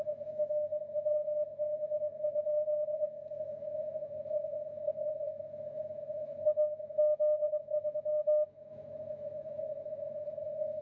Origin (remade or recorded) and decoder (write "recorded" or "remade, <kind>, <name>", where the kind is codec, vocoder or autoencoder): remade, autoencoder, DAC-VAE